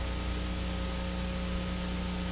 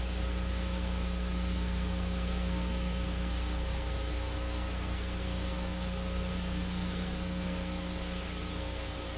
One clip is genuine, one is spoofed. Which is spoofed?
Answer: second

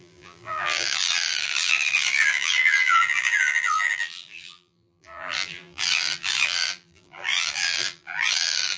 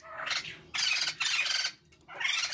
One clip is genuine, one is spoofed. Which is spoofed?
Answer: first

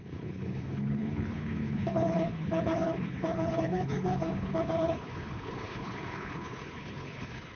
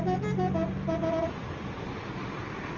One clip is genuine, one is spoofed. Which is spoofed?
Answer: first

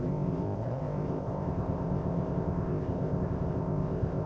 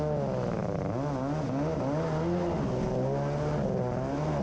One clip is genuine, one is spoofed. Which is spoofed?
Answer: first